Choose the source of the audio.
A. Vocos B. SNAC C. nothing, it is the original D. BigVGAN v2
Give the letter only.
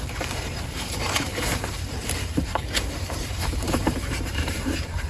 D